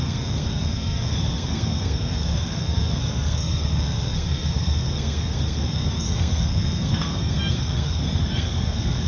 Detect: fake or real fake